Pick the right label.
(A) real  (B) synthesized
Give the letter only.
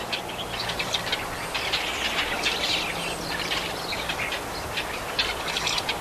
A